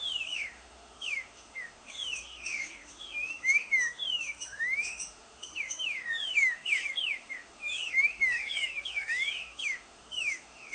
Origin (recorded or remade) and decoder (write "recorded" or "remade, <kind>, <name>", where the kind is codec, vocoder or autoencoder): remade, autoencoder, DAC-VAE